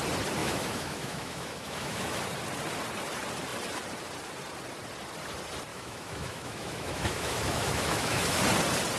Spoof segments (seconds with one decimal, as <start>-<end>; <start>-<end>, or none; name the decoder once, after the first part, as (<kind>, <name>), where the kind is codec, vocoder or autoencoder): 0.4-2.2 (autoencoder, DAC-VAE); 5.7-8.4